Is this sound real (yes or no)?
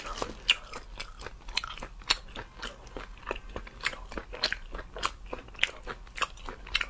yes